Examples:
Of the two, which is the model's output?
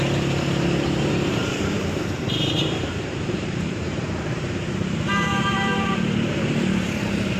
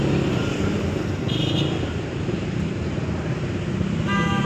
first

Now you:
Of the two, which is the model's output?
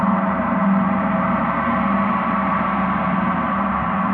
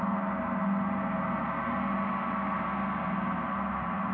first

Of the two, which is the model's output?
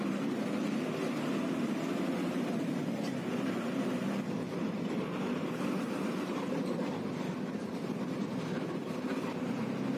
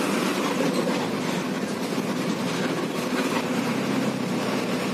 first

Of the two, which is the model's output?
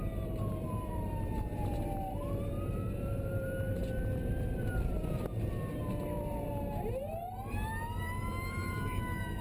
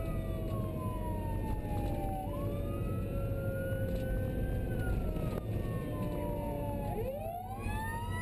first